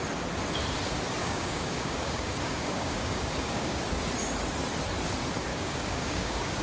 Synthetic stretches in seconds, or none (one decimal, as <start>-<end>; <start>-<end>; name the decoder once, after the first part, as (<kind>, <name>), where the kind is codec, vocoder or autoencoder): 1.2-3.8 (codec, DAC); 5.5-6.6